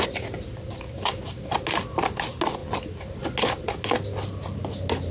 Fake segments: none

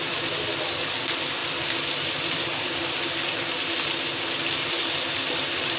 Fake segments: none

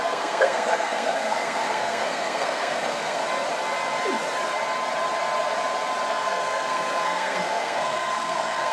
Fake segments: 0.0-3.2; 6.1-8.7

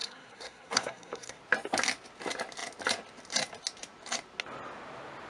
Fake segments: 0.0-1.4